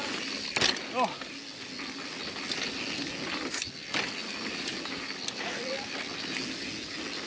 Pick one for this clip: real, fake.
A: real